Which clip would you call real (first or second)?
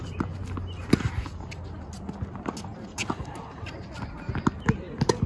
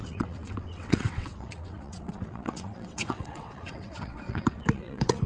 first